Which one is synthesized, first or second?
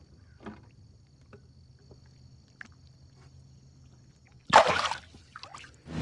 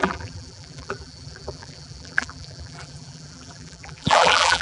second